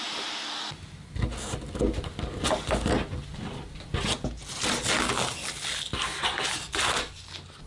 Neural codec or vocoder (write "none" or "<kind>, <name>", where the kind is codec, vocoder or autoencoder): none